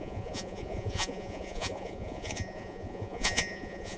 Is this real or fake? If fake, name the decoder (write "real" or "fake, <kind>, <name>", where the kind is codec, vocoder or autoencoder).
fake, vocoder, Vocos